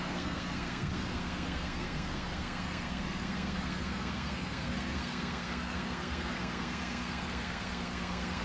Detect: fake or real fake